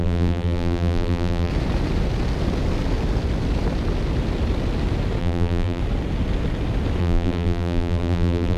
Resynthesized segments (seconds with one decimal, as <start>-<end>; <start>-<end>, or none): 0.0-1.5; 5.2-5.8; 7.0-8.6